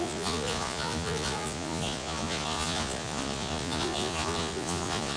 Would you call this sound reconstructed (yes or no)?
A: yes